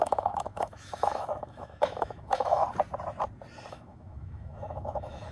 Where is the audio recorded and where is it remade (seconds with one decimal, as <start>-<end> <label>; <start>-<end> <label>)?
0.0-2.6 remade; 2.6-3.7 recorded; 3.7-5.3 remade